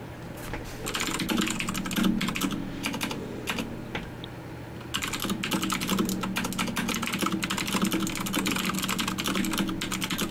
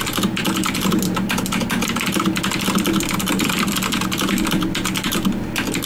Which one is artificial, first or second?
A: second